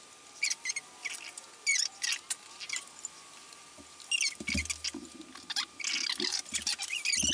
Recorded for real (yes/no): yes